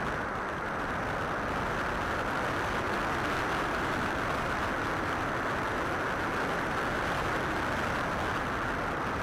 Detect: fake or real real